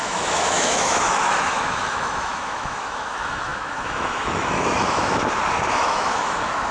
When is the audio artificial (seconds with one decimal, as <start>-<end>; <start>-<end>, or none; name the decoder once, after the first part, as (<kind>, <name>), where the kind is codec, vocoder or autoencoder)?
0.0-5.2 (autoencoder, DAC-VAE); 5.7-6.7